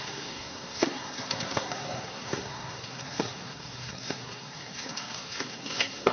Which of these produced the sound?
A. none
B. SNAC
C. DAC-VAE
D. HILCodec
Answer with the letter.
B